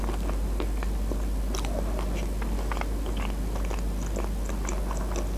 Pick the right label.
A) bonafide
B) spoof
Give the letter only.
A